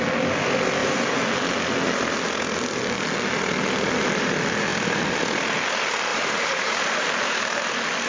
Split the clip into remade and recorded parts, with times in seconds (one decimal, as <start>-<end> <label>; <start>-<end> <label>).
0.0-6.1 recorded; 6.1-7.6 remade; 7.6-8.1 recorded